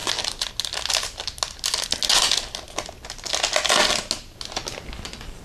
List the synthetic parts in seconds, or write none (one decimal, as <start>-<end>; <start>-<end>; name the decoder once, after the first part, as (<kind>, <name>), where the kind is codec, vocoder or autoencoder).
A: none